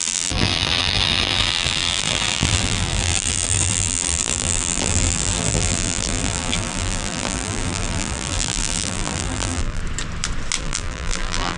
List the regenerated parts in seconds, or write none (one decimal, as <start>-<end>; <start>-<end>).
0.0-9.8; 10.6-11.6